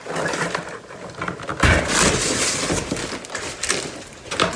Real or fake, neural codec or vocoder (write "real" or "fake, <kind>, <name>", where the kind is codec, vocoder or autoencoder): real